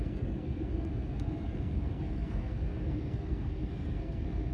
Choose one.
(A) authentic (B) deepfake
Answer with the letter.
B